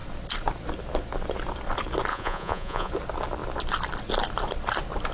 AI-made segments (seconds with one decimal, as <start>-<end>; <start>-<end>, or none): 2.1-2.9